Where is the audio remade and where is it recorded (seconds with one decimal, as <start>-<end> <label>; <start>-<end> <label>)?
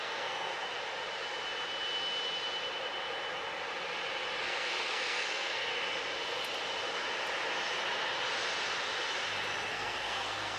0.0-0.5 remade; 0.5-4.4 recorded; 4.4-5.7 remade; 5.7-9.7 recorded; 9.7-10.6 remade